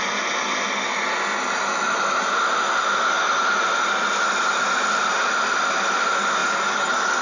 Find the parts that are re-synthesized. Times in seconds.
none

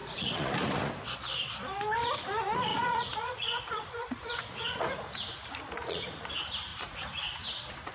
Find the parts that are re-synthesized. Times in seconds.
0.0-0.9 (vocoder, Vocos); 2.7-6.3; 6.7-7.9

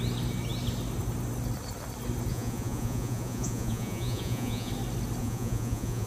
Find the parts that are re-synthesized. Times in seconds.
2.3-4.7 (vocoder, Vocos); 5.2-6.1